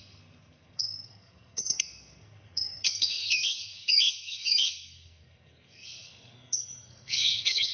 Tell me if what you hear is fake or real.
fake